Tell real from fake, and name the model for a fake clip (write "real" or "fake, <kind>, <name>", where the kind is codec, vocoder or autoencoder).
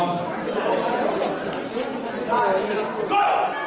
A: real